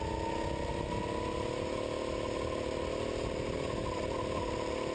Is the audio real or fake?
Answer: real